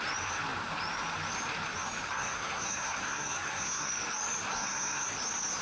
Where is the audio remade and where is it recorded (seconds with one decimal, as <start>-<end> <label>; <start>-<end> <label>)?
0.0-2.2 recorded; 2.2-3.9 remade; 3.9-4.5 recorded; 4.5-5.1 remade; 5.1-5.6 recorded